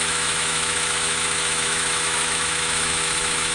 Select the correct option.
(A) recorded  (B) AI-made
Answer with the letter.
B